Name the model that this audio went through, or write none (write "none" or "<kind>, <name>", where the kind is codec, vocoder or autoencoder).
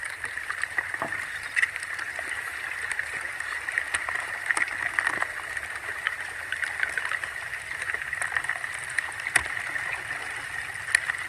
none